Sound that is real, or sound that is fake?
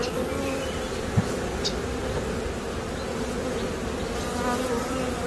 real